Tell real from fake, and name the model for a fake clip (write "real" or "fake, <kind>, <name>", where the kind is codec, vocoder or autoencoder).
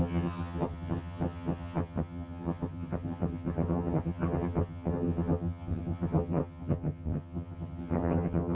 fake, vocoder, HiFi-GAN